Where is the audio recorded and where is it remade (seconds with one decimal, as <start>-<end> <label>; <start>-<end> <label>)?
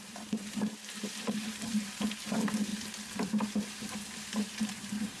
0.0-2.7 remade; 2.7-3.3 recorded; 3.3-5.2 remade